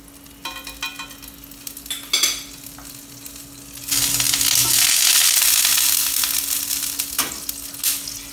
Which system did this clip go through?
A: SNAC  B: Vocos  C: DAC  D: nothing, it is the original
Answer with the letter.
D